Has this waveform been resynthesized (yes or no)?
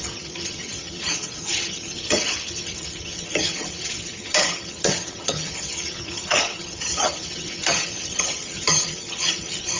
yes